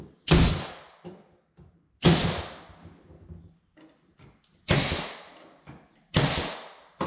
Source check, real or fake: real